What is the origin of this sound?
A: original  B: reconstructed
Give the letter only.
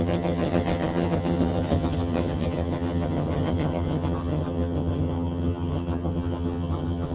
B